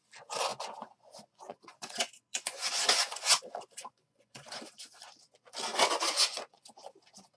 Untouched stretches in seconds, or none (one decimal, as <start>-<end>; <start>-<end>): 0.0-0.5; 4.6-5.7; 6.7-7.4